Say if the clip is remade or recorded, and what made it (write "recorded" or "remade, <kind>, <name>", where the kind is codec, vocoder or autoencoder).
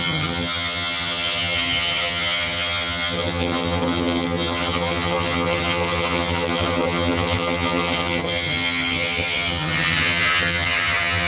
remade, vocoder, HiFi-GAN